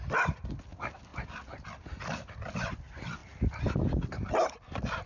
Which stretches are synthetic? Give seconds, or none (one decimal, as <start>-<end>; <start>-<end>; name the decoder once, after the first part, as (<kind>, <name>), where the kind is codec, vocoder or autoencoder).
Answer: none